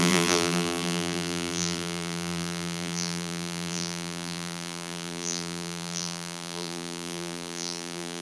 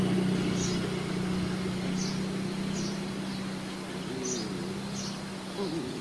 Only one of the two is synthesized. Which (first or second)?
first